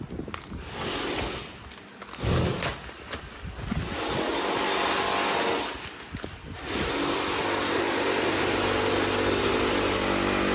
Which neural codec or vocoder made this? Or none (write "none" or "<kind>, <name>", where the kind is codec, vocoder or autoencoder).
none